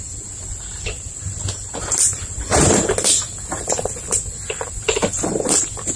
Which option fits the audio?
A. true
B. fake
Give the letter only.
B